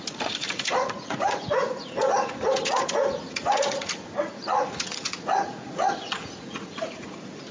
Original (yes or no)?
no